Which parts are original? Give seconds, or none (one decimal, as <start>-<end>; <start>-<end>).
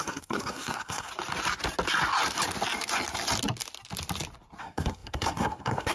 1.1-4.6